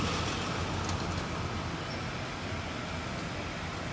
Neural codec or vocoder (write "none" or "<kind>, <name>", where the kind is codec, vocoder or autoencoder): none